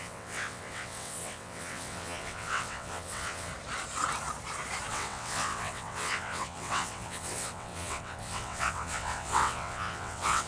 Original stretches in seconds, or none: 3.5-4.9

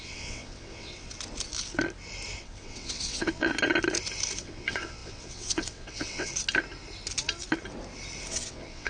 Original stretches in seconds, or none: 1.1-2.4; 3.5-4.4; 6.3-8.3